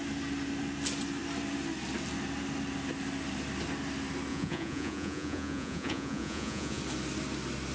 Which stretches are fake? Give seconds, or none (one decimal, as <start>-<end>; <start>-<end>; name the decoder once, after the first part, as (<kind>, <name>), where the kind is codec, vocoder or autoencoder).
4.3-6.8 (vocoder, Vocos)